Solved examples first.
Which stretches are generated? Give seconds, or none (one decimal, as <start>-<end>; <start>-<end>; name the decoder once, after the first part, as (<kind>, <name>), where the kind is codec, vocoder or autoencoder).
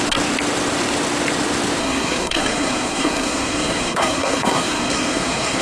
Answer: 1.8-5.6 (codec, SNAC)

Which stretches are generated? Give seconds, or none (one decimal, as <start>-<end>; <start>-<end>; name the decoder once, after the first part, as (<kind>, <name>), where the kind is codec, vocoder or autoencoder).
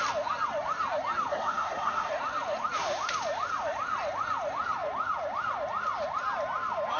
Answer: 1.3-2.1 (codec, SNAC)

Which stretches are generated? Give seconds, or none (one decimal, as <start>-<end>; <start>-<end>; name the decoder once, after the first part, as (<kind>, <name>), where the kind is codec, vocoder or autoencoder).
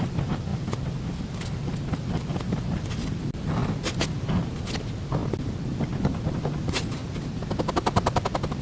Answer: none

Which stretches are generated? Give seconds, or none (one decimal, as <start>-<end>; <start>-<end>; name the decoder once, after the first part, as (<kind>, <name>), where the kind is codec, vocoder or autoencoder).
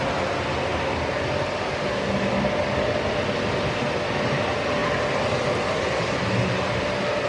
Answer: none